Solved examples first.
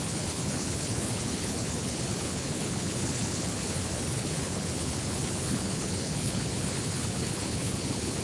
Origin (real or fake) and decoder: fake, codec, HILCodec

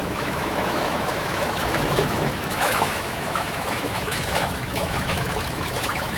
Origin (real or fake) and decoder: fake, autoencoder, DAC-VAE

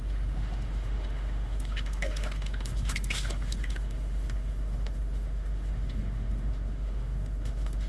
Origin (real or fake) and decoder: fake, autoencoder, DAC-VAE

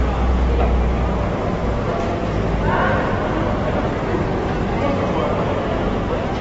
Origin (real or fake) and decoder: real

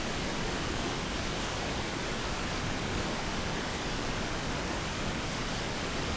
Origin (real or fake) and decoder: fake, codec, DAC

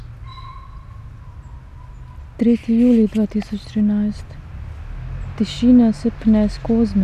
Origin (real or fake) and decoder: real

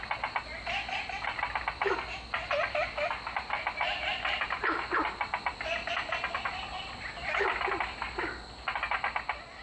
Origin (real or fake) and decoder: real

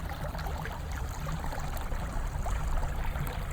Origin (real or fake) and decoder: real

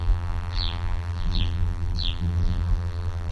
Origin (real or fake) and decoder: fake, vocoder, BigVGAN v2